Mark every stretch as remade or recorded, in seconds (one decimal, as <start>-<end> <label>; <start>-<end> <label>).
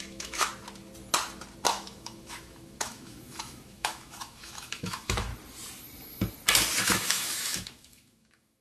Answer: 0.0-0.5 remade; 0.5-1.7 recorded; 1.7-5.3 remade; 5.3-6.8 recorded; 6.8-8.6 remade